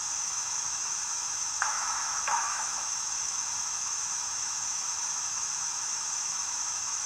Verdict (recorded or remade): remade